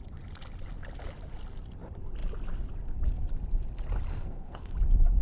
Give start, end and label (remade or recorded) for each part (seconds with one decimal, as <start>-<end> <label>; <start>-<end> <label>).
0.0-4.1 recorded; 4.1-4.7 remade; 4.7-5.2 recorded